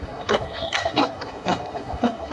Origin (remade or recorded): remade